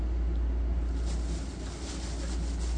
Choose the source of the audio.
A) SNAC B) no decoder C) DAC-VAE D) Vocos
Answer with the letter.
B